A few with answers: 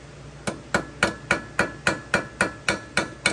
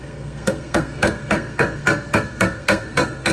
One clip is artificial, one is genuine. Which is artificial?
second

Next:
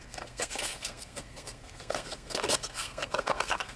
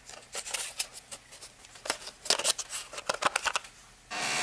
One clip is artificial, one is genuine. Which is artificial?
first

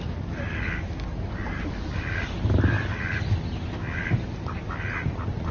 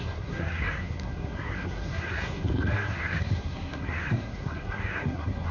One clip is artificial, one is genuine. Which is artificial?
second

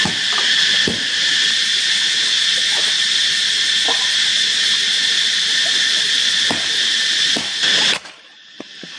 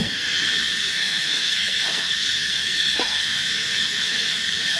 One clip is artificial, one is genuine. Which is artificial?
second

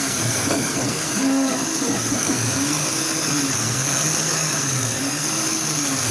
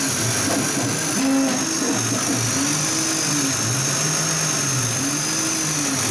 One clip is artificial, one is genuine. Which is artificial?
first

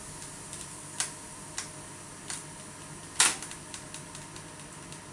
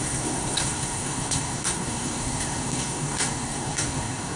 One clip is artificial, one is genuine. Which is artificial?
second